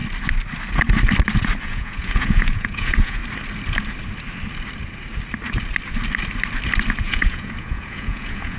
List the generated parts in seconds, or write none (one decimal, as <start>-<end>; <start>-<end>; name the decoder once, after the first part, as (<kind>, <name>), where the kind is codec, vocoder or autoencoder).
1.6-3.2 (vocoder, Vocos); 7.0-8.6